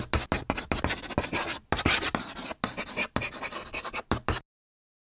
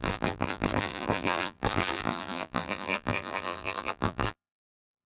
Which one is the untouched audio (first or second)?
first